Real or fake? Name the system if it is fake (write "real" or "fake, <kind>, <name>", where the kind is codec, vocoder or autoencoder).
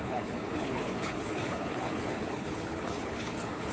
fake, codec, HILCodec